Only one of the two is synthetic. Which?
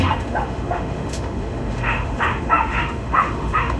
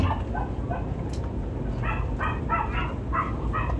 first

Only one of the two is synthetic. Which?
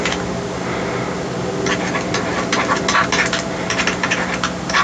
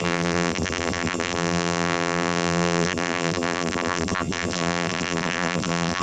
second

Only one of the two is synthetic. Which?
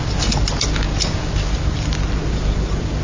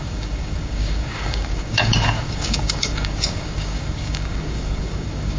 second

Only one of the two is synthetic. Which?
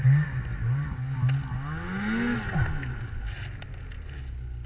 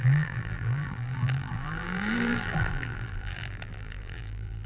second